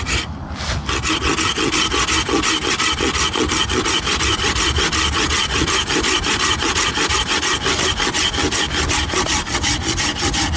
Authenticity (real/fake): real